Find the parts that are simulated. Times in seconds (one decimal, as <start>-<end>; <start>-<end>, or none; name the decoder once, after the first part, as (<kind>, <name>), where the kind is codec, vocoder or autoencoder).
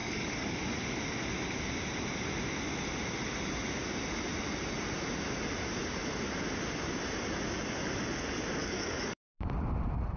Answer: 0.0-0.6 (codec, DAC); 8.6-9.3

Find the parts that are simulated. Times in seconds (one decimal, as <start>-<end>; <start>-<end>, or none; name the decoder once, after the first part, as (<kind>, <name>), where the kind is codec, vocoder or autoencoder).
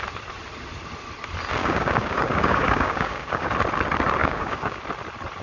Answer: 1.6-3.5 (codec, DAC); 4.2-4.8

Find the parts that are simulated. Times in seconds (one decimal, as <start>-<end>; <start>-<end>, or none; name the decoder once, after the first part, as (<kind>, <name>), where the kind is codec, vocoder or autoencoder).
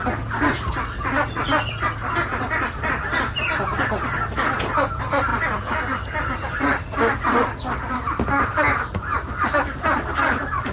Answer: none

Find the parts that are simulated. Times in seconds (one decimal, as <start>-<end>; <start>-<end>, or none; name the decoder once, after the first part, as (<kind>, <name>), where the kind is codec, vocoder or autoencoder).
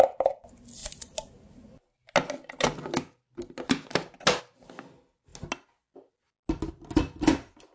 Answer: none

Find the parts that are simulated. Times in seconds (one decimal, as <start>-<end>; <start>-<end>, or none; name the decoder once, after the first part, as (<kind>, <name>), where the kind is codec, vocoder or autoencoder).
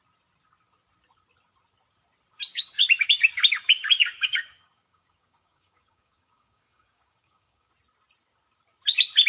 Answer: 2.5-7.7 (codec, DAC)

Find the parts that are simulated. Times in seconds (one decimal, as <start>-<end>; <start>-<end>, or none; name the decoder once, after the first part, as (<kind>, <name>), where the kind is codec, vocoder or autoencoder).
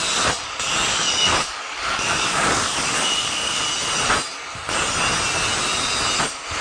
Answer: 0.9-3.6 (codec, DAC)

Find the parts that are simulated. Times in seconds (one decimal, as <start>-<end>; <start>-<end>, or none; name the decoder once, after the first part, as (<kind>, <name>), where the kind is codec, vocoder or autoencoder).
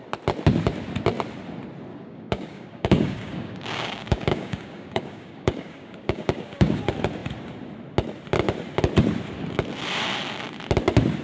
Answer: 1.9-6.8 (codec, DAC)